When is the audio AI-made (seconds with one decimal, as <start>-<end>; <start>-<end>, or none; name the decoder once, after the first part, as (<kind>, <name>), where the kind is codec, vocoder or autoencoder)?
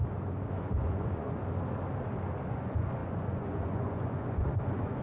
0.5-1.4 (vocoder, Vocos); 2.5-5.0